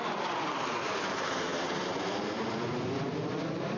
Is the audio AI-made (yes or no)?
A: no